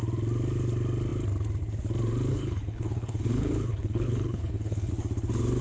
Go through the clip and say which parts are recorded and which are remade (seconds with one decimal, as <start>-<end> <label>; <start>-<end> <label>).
0.0-2.3 recorded; 2.3-4.9 remade; 4.9-5.6 recorded